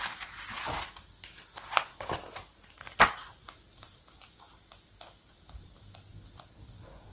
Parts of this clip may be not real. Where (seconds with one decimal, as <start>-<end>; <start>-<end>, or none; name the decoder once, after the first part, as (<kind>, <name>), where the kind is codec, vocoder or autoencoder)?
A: 2.5-6.1 (vocoder, BigVGAN v2)